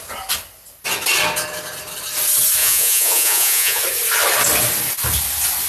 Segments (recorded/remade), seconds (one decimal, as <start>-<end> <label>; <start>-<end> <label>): 0.0-2.6 recorded; 2.6-3.8 remade; 3.8-5.7 recorded